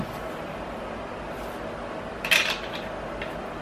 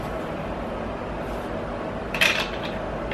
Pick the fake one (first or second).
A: second